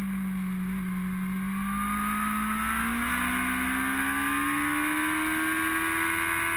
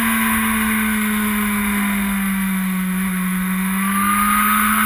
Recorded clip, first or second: first